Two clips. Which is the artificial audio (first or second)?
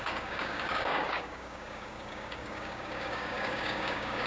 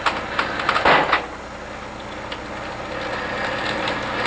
first